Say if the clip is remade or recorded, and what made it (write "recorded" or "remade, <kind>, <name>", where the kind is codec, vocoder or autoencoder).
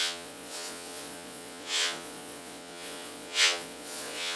remade, vocoder, Vocos